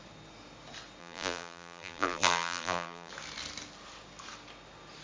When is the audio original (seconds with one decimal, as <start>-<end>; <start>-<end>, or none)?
0.0-1.0; 3.1-5.0